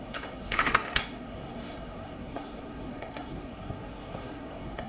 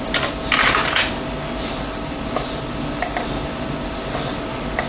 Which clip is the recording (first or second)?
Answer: second